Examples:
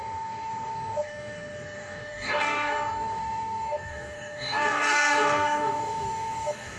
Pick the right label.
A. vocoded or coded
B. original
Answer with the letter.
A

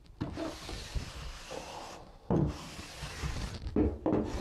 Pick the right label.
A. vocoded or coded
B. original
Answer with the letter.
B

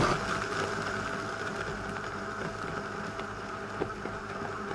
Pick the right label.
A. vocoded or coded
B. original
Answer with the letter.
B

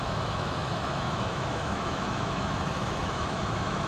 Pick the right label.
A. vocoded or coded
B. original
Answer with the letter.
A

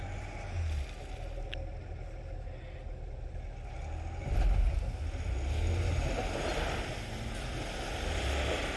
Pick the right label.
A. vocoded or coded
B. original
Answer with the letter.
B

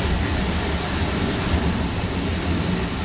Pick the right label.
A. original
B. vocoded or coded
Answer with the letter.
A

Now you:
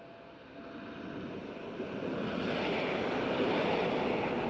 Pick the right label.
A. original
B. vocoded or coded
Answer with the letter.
A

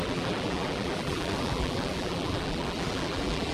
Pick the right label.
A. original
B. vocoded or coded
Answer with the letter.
B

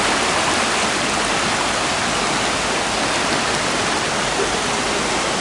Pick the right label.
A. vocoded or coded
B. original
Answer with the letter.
B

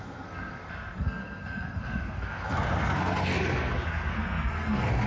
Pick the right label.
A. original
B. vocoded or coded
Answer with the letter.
B